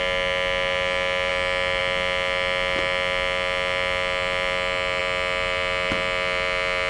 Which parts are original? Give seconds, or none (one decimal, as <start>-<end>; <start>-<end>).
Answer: 0.0-6.9

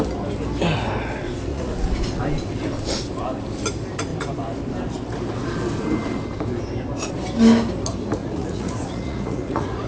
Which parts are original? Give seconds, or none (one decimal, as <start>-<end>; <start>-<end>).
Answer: 0.0-1.5; 2.2-8.2

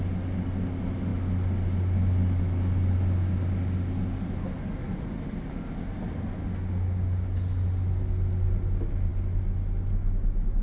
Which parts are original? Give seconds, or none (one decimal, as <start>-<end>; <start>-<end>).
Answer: 0.0-10.6

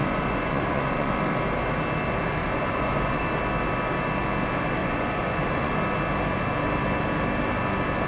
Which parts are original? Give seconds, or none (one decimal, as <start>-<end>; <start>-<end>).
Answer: 1.1-2.4; 3.2-4.8; 5.7-8.1

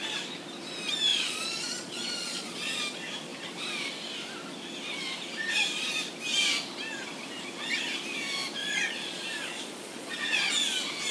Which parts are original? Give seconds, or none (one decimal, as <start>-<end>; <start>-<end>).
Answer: 0.0-1.1; 2.8-8.6; 10.5-11.1

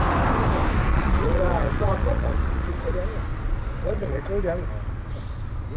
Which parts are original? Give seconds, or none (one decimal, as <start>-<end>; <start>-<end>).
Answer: 0.0-0.9; 2.9-3.3; 4.2-5.8

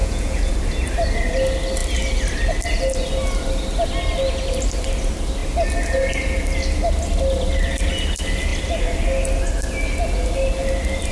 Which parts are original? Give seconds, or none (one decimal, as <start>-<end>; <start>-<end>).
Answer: 0.5-11.1